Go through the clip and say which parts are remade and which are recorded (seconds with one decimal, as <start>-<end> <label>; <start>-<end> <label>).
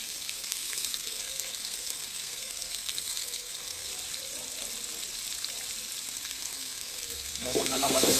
0.0-3.9 remade; 3.9-6.1 recorded; 6.1-8.2 remade